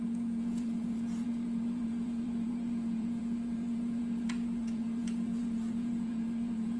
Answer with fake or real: fake